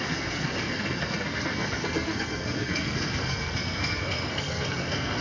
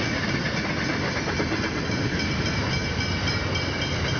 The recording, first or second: second